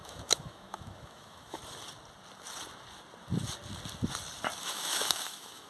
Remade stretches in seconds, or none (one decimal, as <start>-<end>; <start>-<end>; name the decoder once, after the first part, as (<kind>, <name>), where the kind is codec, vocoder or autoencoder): 0.0-1.6 (autoencoder, DAC-VAE); 4.6-5.7